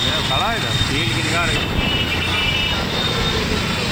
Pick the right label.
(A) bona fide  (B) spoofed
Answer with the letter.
A